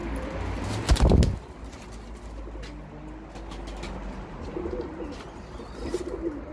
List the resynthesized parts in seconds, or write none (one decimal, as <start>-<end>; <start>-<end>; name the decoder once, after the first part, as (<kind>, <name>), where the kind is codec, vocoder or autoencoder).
none